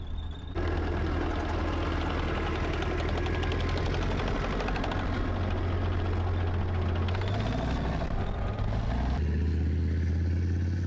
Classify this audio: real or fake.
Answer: real